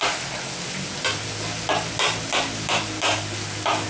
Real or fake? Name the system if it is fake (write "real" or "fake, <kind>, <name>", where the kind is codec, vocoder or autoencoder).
real